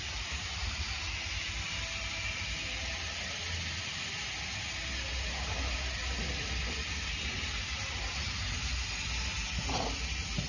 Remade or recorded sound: recorded